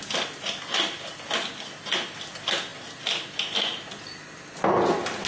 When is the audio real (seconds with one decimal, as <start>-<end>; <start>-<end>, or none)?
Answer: 0.0-5.3